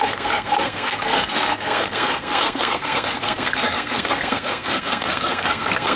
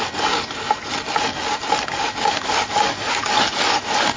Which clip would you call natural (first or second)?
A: second